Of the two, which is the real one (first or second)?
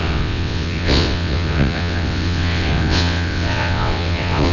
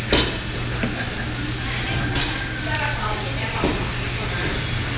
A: second